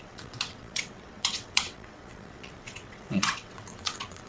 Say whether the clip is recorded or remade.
remade